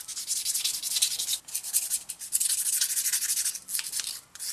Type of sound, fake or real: real